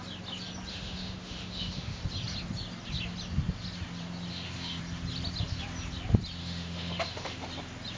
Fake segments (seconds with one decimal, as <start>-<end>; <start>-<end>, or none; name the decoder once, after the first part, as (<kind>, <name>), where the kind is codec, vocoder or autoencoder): 0.7-2.0 (autoencoder, DAC-VAE); 4.3-4.8; 6.4-7.5